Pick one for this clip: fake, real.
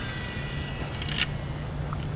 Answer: real